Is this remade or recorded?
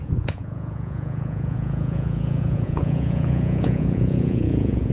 remade